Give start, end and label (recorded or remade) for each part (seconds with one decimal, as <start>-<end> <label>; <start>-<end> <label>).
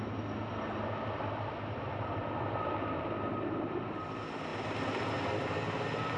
0.0-6.2 recorded